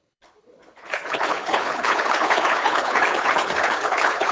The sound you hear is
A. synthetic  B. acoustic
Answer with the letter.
A